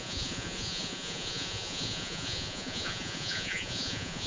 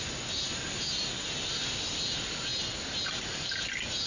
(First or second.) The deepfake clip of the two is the first